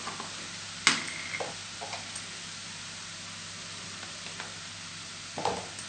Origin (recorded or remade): recorded